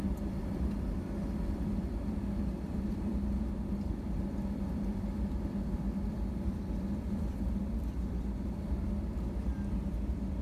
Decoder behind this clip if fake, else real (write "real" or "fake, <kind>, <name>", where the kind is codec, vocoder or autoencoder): fake, vocoder, BigVGAN v2